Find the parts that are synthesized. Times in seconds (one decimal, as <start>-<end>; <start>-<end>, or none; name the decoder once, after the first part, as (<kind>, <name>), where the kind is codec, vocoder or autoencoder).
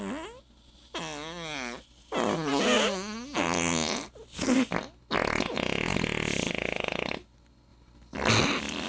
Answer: none